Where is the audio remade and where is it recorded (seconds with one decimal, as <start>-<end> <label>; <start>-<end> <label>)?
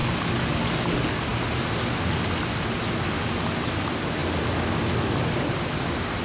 0.0-6.2 recorded